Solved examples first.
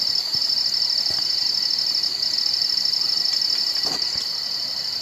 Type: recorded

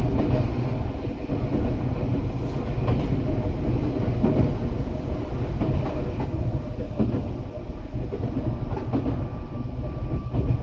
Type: recorded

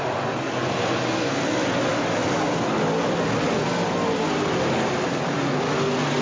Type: recorded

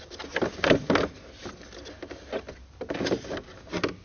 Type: recorded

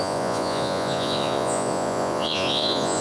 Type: remade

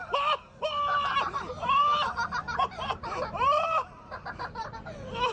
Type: remade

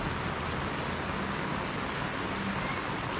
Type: recorded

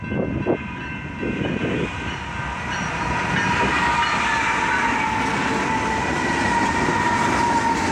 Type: recorded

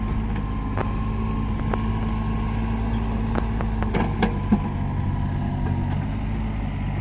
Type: recorded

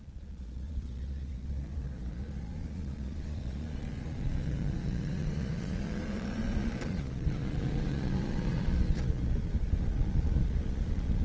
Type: remade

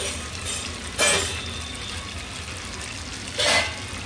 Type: recorded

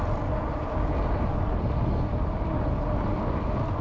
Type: recorded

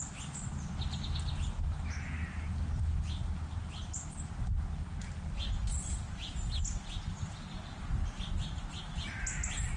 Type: recorded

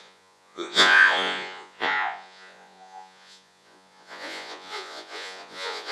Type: remade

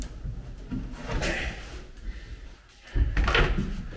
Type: recorded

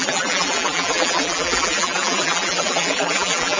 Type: remade